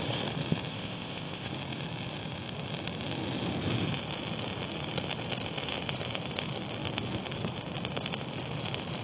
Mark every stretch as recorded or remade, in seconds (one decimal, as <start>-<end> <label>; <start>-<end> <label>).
0.0-0.7 recorded; 0.7-1.5 remade; 1.5-9.0 recorded